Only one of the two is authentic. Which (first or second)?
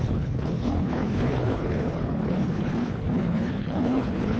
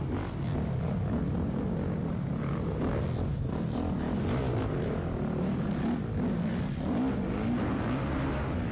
second